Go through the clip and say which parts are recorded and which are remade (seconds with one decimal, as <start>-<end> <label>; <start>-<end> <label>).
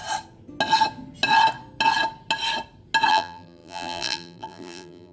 0.0-3.1 recorded; 3.1-5.1 remade